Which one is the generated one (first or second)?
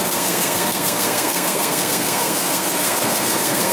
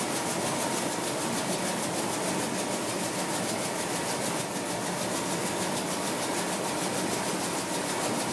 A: first